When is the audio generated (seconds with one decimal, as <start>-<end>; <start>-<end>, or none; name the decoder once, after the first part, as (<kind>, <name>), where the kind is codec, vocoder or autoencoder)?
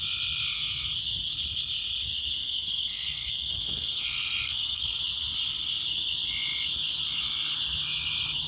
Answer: 2.4-5.0 (codec, SNAC)